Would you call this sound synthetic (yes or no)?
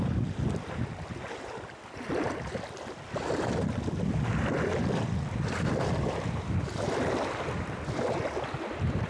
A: no